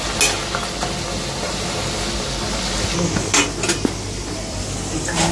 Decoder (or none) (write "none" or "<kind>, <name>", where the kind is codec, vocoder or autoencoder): none